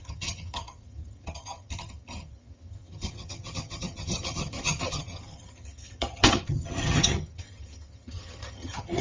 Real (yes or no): no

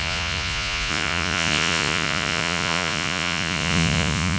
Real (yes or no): no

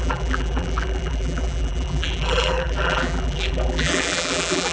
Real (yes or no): no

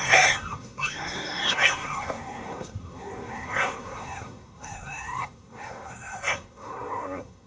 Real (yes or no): no